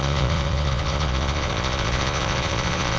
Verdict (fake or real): fake